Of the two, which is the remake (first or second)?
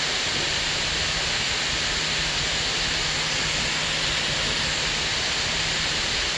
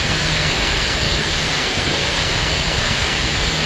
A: second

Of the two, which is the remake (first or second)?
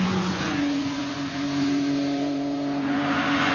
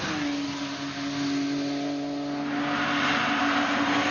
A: first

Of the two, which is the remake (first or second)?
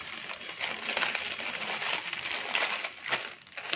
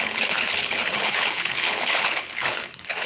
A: second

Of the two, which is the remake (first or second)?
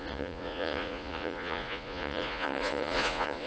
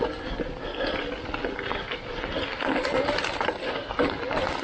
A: first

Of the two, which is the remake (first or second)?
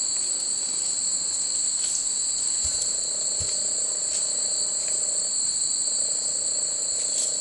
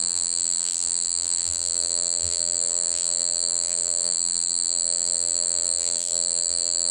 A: second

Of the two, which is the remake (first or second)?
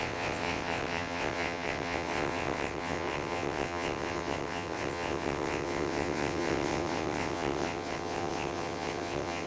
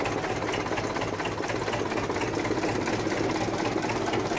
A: first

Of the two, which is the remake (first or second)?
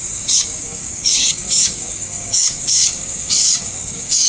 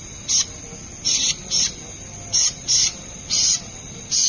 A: first